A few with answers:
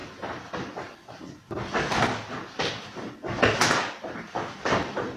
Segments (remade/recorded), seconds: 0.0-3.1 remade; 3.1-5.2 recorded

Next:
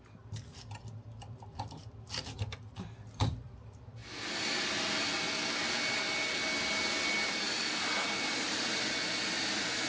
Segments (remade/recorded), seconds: 0.0-4.0 remade; 4.0-7.3 recorded; 7.3-9.9 remade

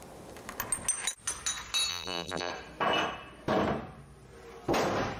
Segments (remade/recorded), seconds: 0.0-1.9 recorded; 1.9-2.5 remade; 2.5-5.2 recorded

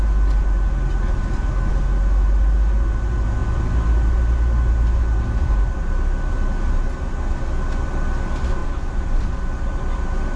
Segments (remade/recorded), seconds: 0.0-8.6 recorded; 8.6-9.2 remade; 9.2-10.4 recorded

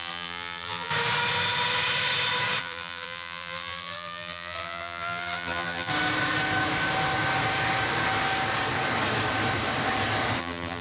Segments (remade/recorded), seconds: 0.0-0.9 remade; 0.9-2.6 recorded; 2.6-5.9 remade; 5.9-10.4 recorded; 10.4-10.8 remade

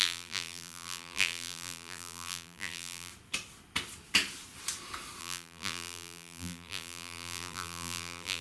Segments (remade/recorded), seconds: 0.0-3.1 remade; 3.1-5.2 recorded; 5.2-8.4 remade

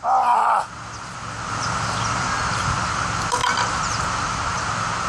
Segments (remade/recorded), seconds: 0.0-5.1 recorded